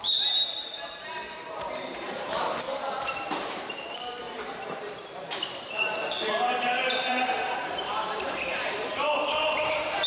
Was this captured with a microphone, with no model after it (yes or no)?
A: no